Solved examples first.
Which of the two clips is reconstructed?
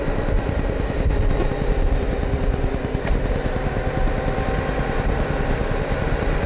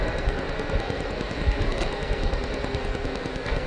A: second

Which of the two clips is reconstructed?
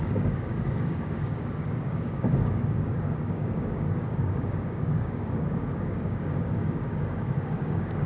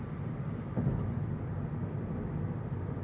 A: first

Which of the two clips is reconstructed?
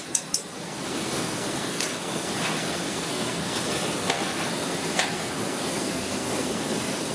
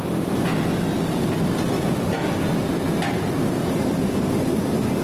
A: first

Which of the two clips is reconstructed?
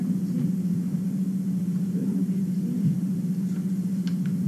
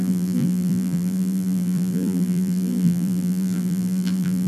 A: second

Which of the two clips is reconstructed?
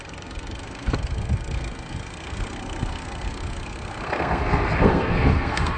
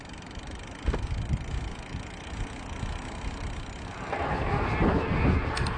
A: first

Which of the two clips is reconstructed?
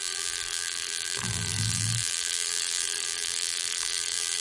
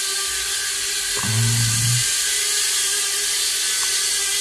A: first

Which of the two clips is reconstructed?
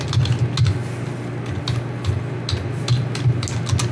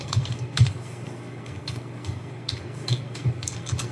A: second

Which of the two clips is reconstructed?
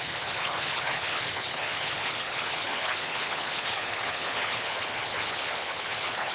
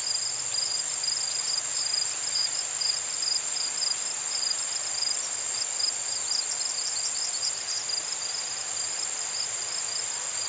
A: first